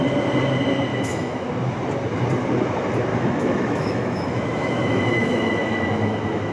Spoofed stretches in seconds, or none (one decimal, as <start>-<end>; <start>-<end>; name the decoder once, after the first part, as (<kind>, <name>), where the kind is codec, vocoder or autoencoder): 0.9-1.5 (autoencoder, DAC-VAE); 3.1-6.5